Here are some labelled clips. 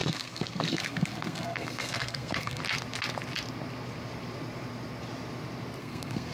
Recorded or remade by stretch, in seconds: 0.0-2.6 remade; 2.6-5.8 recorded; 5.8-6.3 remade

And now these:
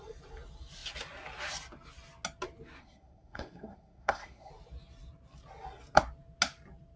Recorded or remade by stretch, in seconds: 0.0-2.8 recorded; 2.8-4.5 remade; 4.5-7.0 recorded

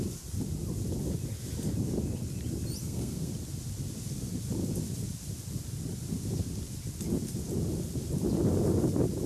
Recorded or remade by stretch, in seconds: 0.0-2.8 recorded; 2.8-3.3 remade; 3.3-9.3 recorded